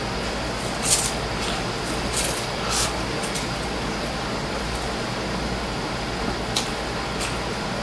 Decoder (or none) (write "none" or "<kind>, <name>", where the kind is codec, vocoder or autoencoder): none